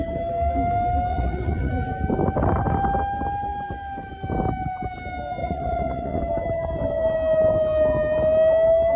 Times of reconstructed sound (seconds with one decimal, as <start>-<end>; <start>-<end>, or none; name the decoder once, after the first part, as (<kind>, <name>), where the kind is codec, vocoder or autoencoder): 1.1-1.7 (vocoder, Vocos); 5.4-6.2